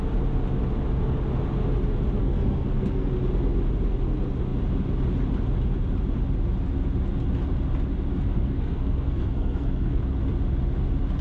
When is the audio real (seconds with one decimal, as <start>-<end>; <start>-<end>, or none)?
0.0-2.2; 3.1-8.1; 10.0-11.2